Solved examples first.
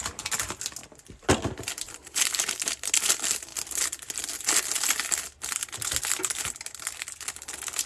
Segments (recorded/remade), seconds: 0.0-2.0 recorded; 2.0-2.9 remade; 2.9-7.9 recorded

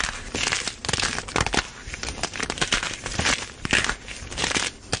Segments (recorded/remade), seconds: 0.0-1.8 recorded; 1.8-3.2 remade; 3.2-5.0 recorded

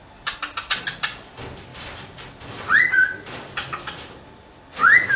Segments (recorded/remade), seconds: 0.0-1.7 recorded; 1.7-4.8 remade; 4.8-5.2 recorded

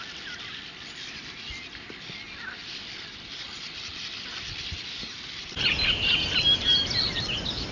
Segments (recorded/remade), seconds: 0.0-2.6 recorded; 2.6-7.2 remade; 7.2-7.7 recorded

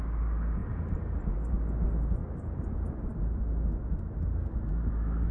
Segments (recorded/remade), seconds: 0.0-5.3 recorded

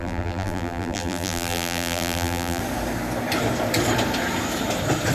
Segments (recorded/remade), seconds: 0.0-2.6 remade; 2.6-5.1 recorded

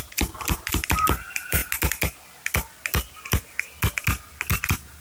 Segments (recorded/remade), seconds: 0.0-1.6 remade; 1.6-4.6 recorded; 4.6-5.0 remade

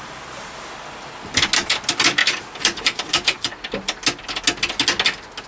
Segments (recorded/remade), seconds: 0.0-2.2 recorded; 2.2-3.5 remade; 3.5-5.5 recorded